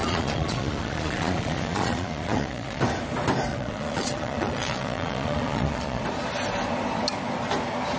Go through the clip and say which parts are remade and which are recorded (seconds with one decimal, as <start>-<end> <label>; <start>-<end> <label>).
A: 0.0-2.8 remade; 2.8-3.5 recorded; 3.5-6.0 remade; 6.0-8.0 recorded